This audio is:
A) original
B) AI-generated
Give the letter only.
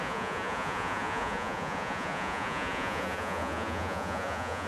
B